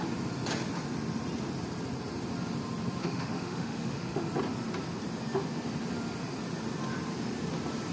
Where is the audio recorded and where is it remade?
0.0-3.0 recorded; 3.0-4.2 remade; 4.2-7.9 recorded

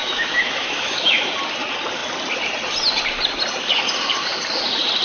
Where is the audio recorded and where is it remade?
0.0-1.3 remade; 1.3-5.0 recorded

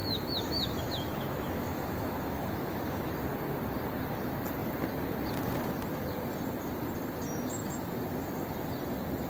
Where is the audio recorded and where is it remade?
0.0-3.1 remade; 3.1-9.3 recorded

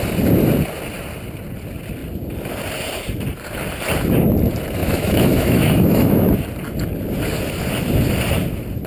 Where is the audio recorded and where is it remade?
0.0-4.8 recorded; 4.8-6.3 remade; 6.3-8.9 recorded

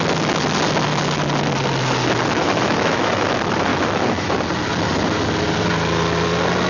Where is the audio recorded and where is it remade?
0.0-2.4 recorded; 2.4-3.2 remade; 3.2-3.7 recorded; 3.7-4.3 remade; 4.3-6.7 recorded

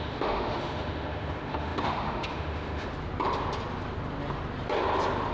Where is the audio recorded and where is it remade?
0.0-2.9 remade; 2.9-5.3 recorded

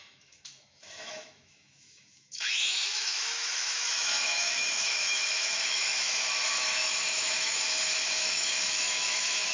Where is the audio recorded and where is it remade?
0.0-9.5 remade